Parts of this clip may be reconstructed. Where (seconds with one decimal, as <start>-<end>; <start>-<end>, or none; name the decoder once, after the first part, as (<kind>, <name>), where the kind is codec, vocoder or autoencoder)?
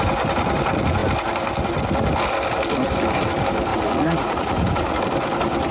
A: 3.7-5.0 (vocoder, Vocos)